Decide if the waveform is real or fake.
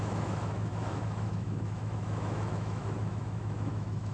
fake